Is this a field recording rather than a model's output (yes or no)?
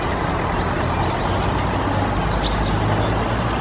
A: yes